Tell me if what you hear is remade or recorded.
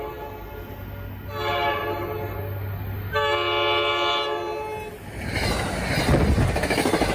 recorded